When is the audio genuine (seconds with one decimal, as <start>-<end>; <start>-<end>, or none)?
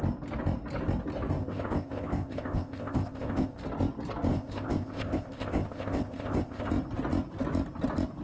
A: 0.0-1.4; 3.6-4.3; 6.7-8.2